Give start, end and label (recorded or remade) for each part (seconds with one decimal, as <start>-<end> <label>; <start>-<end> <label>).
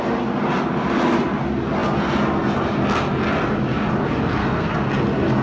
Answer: 0.0-4.4 recorded; 4.4-4.9 remade; 4.9-5.4 recorded